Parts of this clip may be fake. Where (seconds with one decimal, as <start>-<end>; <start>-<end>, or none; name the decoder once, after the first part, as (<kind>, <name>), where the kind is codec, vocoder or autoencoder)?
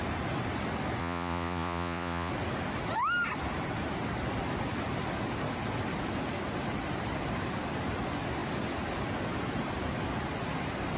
1.0-2.3 (vocoder, Vocos)